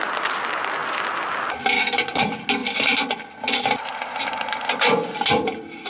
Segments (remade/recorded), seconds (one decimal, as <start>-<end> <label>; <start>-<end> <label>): 0.0-5.9 recorded